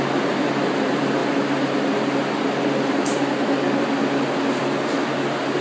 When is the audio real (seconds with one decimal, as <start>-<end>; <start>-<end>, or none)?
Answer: 0.0-5.6